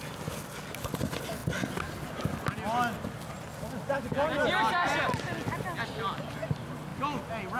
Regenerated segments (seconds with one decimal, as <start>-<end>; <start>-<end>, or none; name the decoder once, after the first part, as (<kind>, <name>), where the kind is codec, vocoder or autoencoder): none